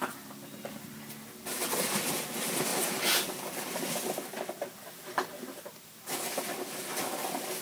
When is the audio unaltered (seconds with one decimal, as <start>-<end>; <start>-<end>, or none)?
0.0-7.6